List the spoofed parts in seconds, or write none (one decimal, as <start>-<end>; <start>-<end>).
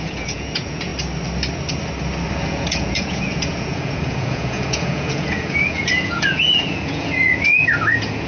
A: 0.0-0.9; 2.3-8.3